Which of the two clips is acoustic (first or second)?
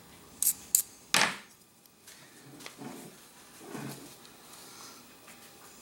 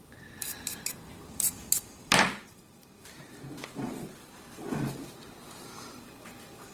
first